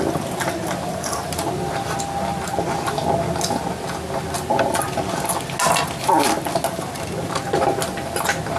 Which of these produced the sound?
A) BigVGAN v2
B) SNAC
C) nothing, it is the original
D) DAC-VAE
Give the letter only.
C